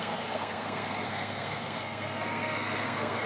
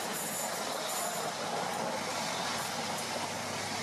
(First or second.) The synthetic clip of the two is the first